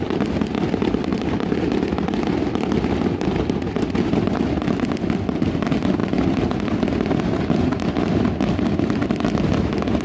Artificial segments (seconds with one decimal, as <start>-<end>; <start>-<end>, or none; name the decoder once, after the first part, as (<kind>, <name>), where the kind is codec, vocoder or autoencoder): none